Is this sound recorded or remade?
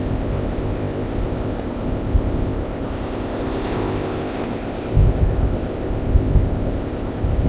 remade